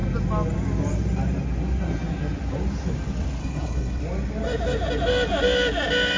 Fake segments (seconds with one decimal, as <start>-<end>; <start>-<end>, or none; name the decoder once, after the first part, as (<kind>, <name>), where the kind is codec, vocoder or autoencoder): 3.4-4.0 (codec, HILCodec)